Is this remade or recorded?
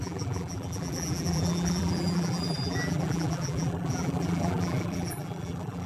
remade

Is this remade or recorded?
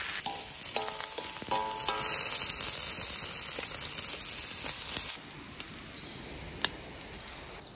recorded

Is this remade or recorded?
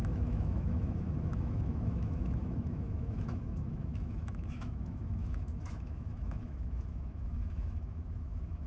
remade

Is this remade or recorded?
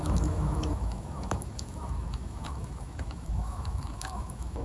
remade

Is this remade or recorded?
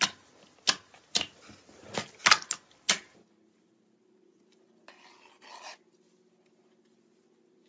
recorded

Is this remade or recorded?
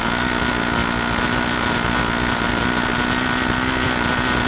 recorded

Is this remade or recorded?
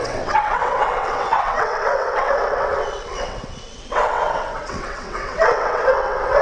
remade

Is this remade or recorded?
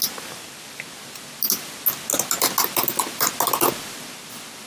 recorded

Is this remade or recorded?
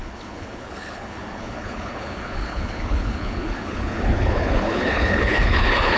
remade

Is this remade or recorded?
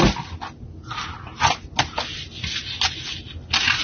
recorded